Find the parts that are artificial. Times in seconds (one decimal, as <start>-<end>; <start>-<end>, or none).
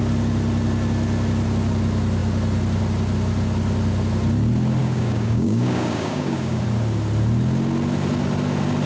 4.8-6.6